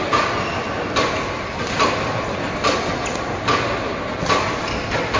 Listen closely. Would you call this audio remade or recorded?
recorded